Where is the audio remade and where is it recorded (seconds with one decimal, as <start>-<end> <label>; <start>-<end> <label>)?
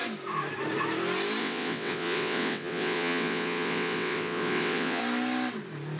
0.0-1.4 recorded; 1.4-5.0 remade; 5.0-6.0 recorded